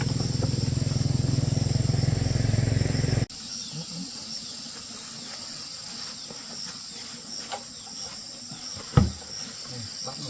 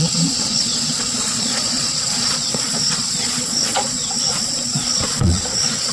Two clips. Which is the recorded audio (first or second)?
first